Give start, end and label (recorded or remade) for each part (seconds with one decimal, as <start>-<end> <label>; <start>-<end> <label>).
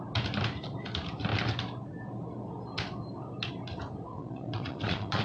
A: 0.0-4.1 recorded; 4.1-5.2 remade